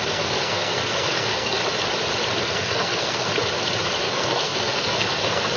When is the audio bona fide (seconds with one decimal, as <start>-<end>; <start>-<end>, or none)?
1.6-2.4; 3.3-4.0